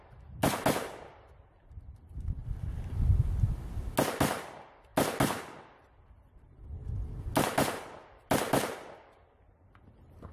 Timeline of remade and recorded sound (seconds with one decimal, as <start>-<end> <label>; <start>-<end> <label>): 0.0-10.3 recorded

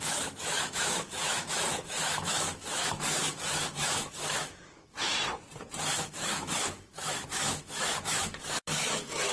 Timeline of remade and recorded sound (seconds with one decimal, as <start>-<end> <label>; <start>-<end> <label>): 0.0-5.1 remade; 5.1-5.9 recorded; 5.9-9.3 remade

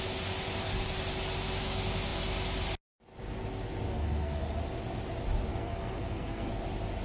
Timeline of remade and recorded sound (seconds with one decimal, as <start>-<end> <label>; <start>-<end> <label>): 0.0-3.9 recorded; 3.9-4.6 remade; 4.6-5.5 recorded; 5.5-6.5 remade; 6.5-7.0 recorded

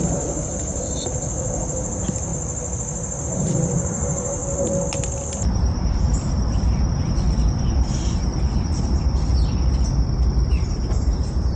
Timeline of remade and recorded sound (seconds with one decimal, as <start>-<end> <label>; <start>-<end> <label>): 0.0-2.3 remade; 2.3-3.2 recorded; 3.2-4.4 remade; 4.4-5.2 recorded; 5.2-9.3 remade; 9.3-10.0 recorded; 10.0-11.6 remade

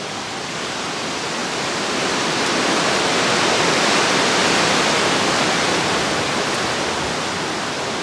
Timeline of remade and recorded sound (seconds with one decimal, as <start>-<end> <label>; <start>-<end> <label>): 0.0-1.4 recorded; 1.4-3.6 remade; 3.6-8.0 recorded

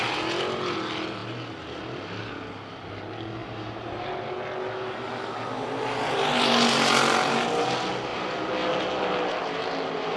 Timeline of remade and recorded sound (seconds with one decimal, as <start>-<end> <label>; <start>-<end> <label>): 0.0-10.2 recorded

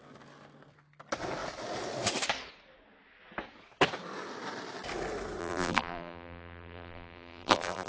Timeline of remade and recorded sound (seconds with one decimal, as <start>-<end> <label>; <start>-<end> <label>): 0.0-5.4 recorded; 5.4-7.9 remade

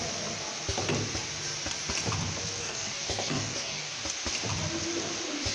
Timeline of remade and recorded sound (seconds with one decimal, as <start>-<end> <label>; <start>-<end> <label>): 0.0-2.6 recorded; 2.6-3.9 remade; 3.9-5.5 recorded